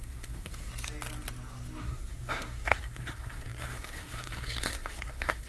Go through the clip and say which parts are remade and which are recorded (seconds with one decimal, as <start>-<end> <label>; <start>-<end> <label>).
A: 0.0-0.7 remade; 0.7-1.8 recorded; 1.8-5.5 remade